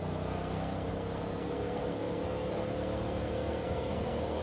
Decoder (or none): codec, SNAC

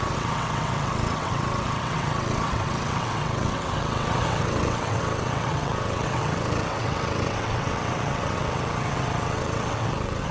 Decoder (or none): vocoder, WaveNeXt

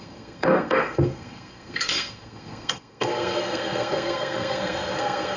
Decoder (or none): codec, SNAC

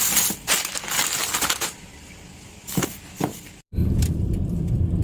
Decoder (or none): vocoder, BigVGAN v2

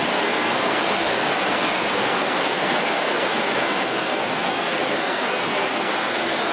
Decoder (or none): codec, SNAC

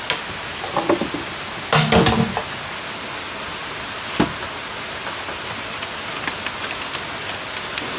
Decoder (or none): none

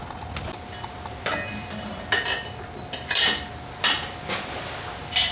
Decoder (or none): none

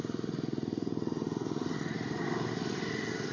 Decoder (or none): none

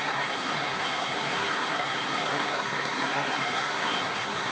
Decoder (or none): codec, SNAC